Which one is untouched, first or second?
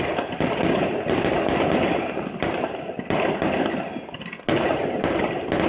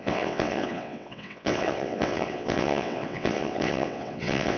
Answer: first